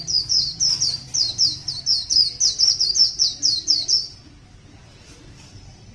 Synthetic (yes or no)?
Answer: no